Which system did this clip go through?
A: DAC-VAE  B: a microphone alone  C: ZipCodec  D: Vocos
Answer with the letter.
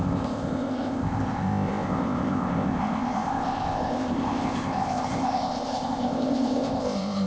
C